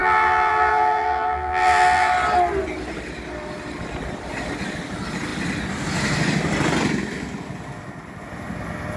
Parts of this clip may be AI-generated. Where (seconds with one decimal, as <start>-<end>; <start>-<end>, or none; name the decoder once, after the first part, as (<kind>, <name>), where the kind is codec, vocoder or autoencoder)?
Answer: 0.0-2.1 (vocoder, BigVGAN v2)